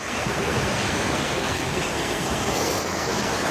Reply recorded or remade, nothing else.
remade